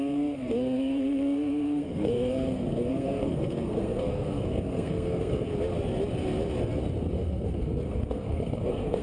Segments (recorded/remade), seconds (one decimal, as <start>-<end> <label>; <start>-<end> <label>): 0.0-5.5 remade; 5.5-7.1 recorded; 7.1-9.0 remade